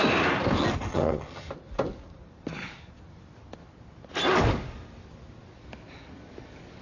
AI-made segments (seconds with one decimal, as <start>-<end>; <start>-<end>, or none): 0.9-1.5